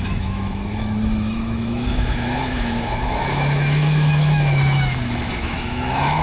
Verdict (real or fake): fake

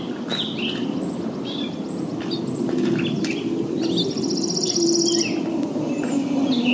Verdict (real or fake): real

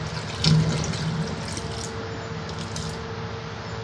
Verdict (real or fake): real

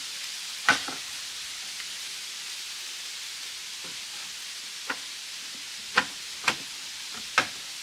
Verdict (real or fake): real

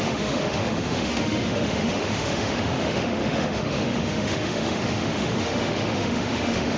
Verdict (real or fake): fake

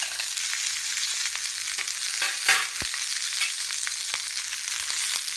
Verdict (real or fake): real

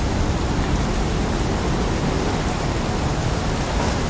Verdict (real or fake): real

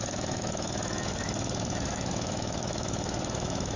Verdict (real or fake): fake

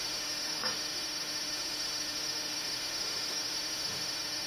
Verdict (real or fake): fake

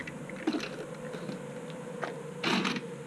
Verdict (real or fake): real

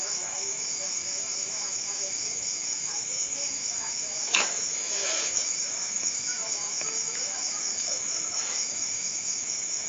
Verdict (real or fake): fake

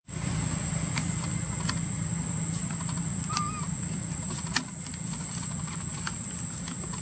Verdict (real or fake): real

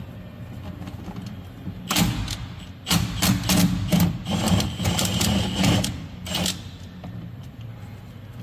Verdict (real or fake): real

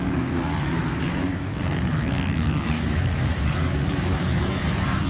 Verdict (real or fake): fake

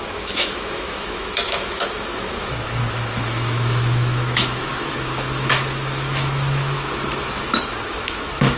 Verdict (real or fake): fake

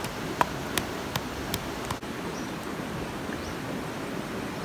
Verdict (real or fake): real